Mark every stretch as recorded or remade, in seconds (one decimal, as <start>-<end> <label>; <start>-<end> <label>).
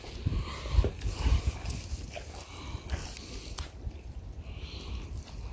0.0-5.5 recorded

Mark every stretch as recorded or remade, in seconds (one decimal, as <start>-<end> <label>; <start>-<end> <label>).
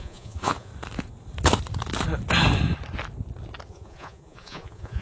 0.0-0.7 remade; 0.7-3.7 recorded; 3.7-5.0 remade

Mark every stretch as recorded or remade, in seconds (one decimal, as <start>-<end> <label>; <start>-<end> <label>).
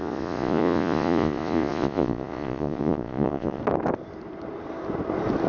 0.0-3.6 remade; 3.6-5.5 recorded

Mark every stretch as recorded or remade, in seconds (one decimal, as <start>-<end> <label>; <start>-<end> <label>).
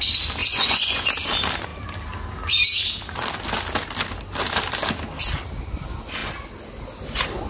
0.0-0.4 recorded; 0.4-1.1 remade; 1.1-7.5 recorded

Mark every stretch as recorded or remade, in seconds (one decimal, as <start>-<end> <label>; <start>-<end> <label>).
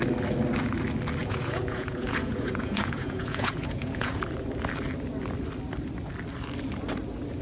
0.0-1.2 recorded; 1.2-4.2 remade; 4.2-7.4 recorded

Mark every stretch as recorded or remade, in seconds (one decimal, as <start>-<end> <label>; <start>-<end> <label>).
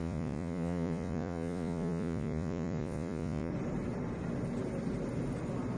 0.0-3.5 remade; 3.5-5.8 recorded